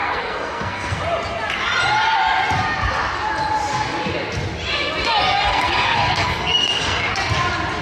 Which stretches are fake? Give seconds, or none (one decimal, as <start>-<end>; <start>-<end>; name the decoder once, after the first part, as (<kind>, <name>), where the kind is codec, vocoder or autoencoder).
0.0-1.0 (codec, SNAC); 5.5-7.1